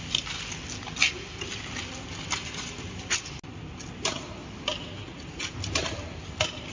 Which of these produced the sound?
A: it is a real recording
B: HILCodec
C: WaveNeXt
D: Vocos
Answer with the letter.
A